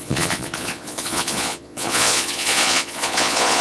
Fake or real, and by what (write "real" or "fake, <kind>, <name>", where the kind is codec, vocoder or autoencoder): fake, vocoder, Vocos